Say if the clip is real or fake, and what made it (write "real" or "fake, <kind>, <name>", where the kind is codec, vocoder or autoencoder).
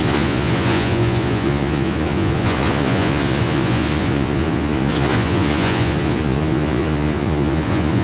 fake, vocoder, Vocos